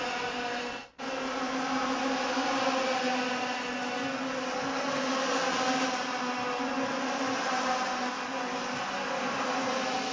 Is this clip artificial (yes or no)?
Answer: no